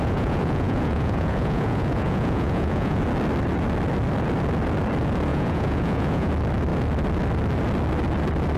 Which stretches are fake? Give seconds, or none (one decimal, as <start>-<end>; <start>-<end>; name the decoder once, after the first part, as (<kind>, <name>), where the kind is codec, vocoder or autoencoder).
0.0-3.0 (vocoder, Vocos); 5.3-6.3